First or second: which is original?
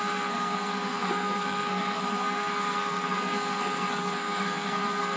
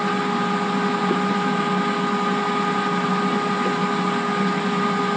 second